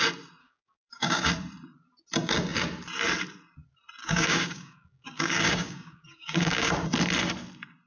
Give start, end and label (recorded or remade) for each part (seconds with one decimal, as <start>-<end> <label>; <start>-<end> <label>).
0.0-0.4 recorded; 0.4-1.3 remade; 1.3-4.0 recorded; 4.0-6.7 remade; 6.7-7.9 recorded